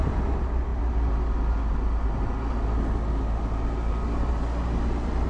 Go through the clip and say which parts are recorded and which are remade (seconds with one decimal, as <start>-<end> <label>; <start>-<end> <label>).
0.0-5.3 recorded